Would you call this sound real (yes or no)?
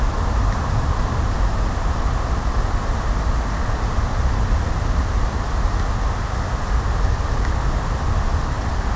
yes